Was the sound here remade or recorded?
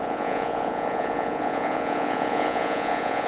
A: remade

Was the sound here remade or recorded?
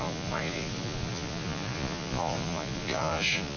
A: remade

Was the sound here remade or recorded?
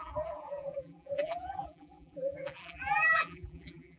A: remade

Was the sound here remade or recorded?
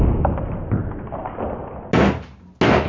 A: recorded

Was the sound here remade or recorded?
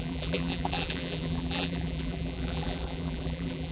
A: remade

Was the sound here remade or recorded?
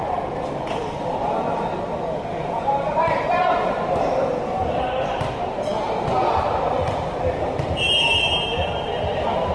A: remade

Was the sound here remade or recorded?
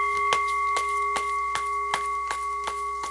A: recorded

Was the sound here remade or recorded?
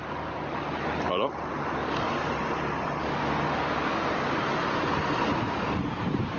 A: recorded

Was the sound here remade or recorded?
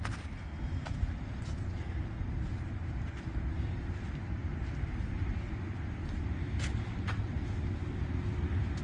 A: recorded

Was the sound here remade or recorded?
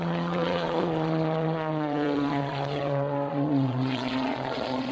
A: remade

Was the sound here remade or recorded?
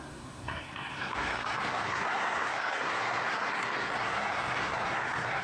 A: remade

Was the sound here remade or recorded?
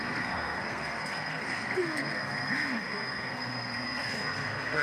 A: remade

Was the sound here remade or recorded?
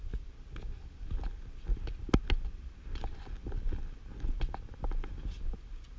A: recorded